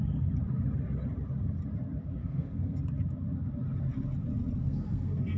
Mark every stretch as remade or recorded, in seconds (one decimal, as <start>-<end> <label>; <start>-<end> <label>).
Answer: 0.0-2.2 recorded; 2.2-2.8 remade; 2.8-4.6 recorded; 4.6-5.4 remade

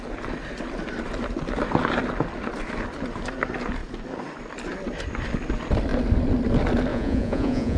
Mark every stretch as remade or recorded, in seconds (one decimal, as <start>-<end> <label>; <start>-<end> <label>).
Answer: 0.0-6.9 recorded; 6.9-7.8 remade

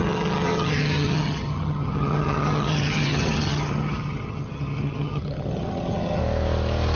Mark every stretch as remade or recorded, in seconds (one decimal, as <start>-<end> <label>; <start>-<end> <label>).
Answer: 0.0-6.2 remade; 6.2-7.0 recorded

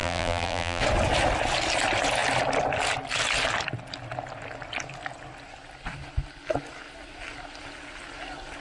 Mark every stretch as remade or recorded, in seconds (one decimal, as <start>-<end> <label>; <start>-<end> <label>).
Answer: 0.0-0.8 remade; 0.8-8.6 recorded

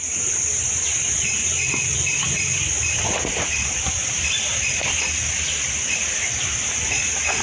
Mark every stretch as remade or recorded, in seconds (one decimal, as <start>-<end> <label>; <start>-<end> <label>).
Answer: 0.0-7.4 recorded